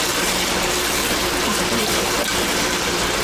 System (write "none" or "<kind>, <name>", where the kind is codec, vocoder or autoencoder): none